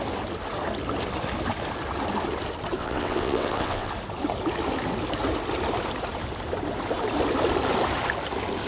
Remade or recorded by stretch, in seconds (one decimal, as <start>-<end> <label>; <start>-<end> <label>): 0.0-2.8 recorded; 2.8-3.9 remade; 3.9-8.7 recorded